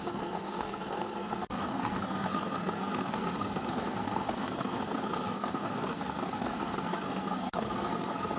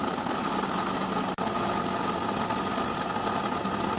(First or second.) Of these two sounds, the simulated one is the first